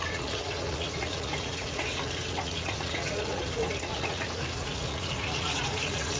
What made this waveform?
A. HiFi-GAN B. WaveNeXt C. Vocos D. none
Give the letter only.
C